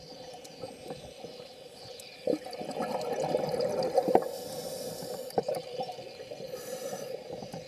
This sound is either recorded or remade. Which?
recorded